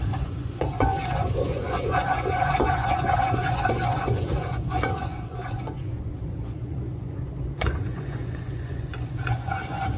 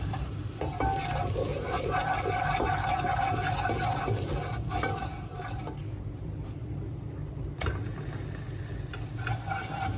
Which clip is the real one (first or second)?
second